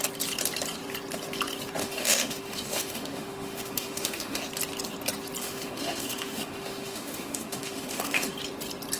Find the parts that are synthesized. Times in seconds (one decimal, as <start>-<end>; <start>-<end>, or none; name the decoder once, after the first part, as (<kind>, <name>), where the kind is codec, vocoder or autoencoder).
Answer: 1.8-4.4 (autoencoder, DAC-VAE); 5.4-8.3